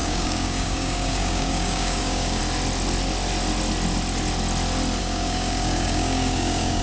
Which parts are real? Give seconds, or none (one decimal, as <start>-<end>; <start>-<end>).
2.4-5.0